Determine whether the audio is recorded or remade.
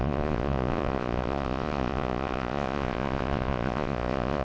remade